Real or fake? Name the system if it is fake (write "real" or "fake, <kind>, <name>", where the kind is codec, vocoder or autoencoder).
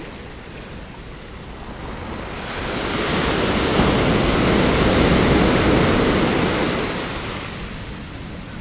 real